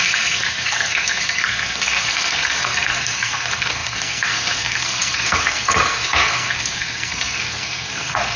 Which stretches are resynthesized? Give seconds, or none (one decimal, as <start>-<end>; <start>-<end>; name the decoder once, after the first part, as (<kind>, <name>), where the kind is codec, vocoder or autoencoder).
0.0-8.4 (codec, SNAC)